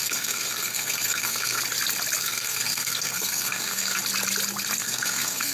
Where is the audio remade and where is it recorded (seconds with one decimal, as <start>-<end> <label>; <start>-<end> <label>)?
0.0-1.6 remade; 1.6-2.2 recorded; 2.2-4.0 remade; 4.0-4.8 recorded; 4.8-5.5 remade